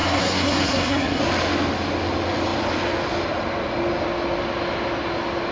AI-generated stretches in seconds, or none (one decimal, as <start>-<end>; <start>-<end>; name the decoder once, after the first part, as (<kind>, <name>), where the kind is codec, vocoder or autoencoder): 0.0-1.2 (codec, SNAC)